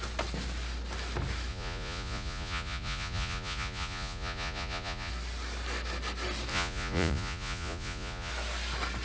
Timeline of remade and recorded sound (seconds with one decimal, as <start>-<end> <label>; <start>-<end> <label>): 0.0-1.5 recorded; 1.5-5.1 remade; 5.1-6.5 recorded; 6.5-8.3 remade; 8.3-9.0 recorded